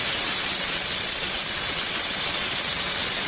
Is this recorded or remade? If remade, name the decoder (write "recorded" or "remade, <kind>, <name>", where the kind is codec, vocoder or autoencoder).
remade, vocoder, WaveNeXt